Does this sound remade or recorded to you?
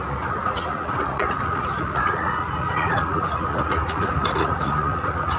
remade